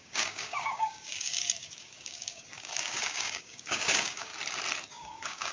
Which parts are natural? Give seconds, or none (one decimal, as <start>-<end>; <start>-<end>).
4.3-4.9